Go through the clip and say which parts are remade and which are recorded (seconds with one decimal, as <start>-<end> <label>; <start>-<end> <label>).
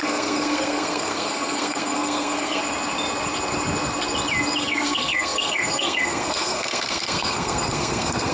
0.0-2.6 remade; 2.6-4.6 recorded; 4.6-8.3 remade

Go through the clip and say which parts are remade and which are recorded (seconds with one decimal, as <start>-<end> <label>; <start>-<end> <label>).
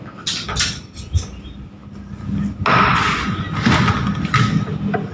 0.0-5.1 recorded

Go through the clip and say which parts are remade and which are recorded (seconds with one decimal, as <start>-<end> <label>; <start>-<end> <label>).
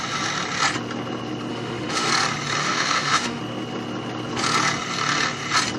0.0-1.5 recorded; 1.5-2.1 remade; 2.1-2.6 recorded; 2.6-3.4 remade; 3.4-5.8 recorded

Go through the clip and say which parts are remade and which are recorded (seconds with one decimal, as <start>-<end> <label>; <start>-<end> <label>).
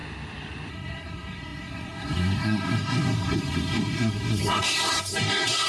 0.0-0.7 recorded; 0.7-5.7 remade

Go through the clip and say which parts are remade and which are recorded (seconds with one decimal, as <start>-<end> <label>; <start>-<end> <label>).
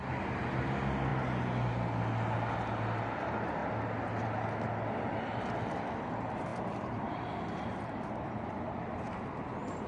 0.0-3.6 recorded; 3.6-5.2 remade; 5.2-6.5 recorded; 6.5-9.1 remade; 9.1-9.9 recorded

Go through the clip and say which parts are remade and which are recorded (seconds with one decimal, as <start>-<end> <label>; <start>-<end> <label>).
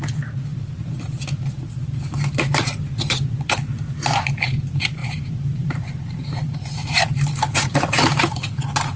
0.0-3.7 remade; 3.7-4.3 recorded; 4.3-9.0 remade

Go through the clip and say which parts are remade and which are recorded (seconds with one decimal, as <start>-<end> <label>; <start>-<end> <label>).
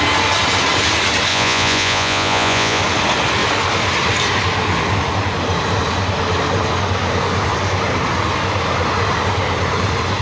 0.0-1.3 recorded; 1.3-2.8 remade; 2.8-10.2 recorded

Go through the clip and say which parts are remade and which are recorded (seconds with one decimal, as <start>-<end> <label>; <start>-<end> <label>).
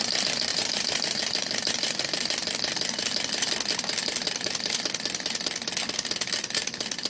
0.0-0.5 recorded; 0.5-2.0 remade; 2.0-7.1 recorded